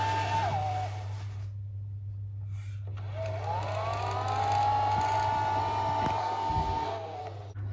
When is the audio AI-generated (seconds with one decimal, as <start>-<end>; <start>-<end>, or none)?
6.2-7.2